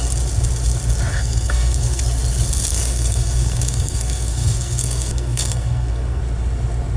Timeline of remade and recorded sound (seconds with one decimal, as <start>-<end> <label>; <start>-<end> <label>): 0.0-1.1 recorded; 1.1-2.0 remade; 2.0-2.7 recorded; 2.7-6.2 remade; 6.2-7.0 recorded